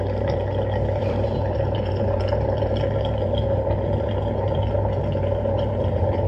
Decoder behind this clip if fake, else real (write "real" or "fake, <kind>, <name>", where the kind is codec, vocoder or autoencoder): fake, vocoder, BigVGAN v2